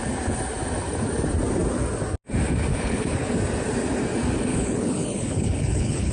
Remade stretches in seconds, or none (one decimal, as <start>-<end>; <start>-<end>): 2.7-3.3; 4.5-6.1